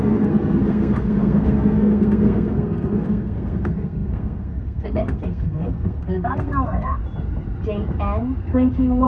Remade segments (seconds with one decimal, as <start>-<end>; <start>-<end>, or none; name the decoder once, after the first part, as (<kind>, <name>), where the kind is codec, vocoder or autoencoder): 0.0-7.0 (codec, SNAC); 8.4-9.1